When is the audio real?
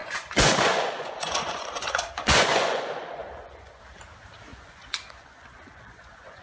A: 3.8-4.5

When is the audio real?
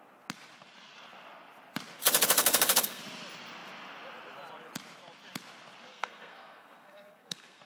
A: 0.0-2.4; 3.0-5.9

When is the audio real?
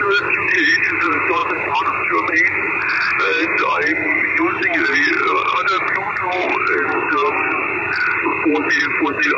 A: 0.0-9.4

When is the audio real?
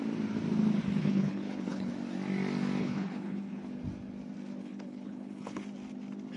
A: 0.0-1.0; 1.9-2.8; 3.7-4.6; 5.6-6.4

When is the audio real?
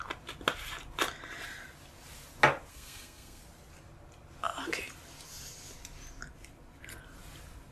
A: 0.0-2.7; 3.4-7.7